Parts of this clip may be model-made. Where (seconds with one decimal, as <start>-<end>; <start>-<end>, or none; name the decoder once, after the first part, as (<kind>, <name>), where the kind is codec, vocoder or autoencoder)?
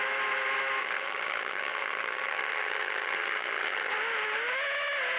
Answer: 0.8-3.9 (vocoder, HiFi-GAN)